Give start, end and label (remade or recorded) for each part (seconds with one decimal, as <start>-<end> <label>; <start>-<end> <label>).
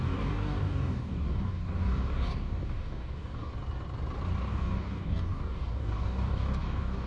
0.0-3.5 remade; 3.5-4.5 recorded; 4.5-7.1 remade